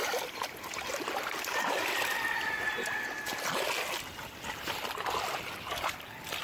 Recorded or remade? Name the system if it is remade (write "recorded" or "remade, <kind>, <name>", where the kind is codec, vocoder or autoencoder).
remade, vocoder, BigVGAN v2